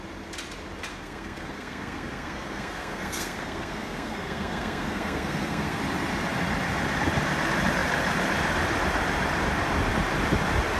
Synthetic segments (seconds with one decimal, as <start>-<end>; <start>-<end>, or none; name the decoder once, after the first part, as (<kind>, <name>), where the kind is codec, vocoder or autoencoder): 0.9-5.8 (codec, SNAC)